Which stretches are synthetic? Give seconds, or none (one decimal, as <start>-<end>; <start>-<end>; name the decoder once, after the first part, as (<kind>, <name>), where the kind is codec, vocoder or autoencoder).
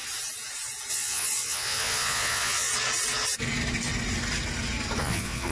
0.9-2.7 (vocoder, Vocos); 5.0-5.5